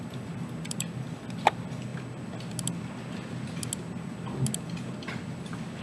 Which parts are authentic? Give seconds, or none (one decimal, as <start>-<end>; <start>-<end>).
1.9-5.8